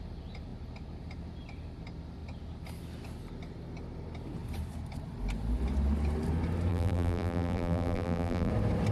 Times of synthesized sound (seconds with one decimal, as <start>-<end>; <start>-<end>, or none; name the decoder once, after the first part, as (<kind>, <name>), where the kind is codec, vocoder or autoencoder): 6.7-8.5 (vocoder, BigVGAN v2)